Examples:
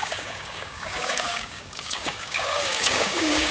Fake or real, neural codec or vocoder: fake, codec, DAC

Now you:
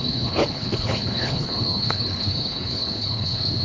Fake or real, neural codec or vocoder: fake, codec, HILCodec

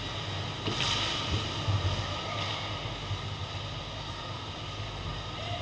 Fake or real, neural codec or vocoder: real